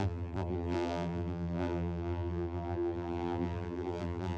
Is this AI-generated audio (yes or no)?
yes